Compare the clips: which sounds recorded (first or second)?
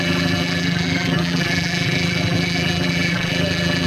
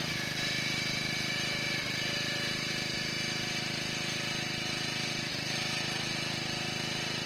second